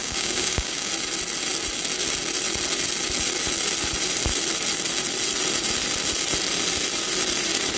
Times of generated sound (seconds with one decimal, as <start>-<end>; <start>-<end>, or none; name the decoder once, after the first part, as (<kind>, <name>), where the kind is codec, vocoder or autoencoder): 0.0-0.9 (codec, DAC)